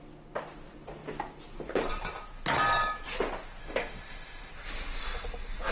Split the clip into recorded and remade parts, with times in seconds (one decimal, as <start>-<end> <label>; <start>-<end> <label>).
0.0-3.6 recorded; 3.6-4.5 remade; 4.5-5.7 recorded